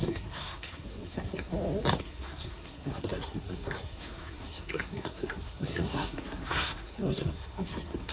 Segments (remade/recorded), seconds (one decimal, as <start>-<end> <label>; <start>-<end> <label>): 0.0-1.5 remade; 1.5-2.0 recorded; 2.0-8.1 remade